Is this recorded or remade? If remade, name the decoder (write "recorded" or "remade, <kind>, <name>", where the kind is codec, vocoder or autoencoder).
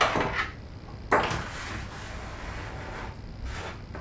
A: recorded